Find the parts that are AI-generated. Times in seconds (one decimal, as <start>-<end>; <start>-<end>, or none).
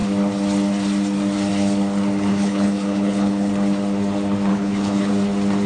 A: 2.3-3.5; 4.5-5.1